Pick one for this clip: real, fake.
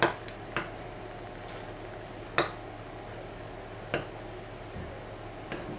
real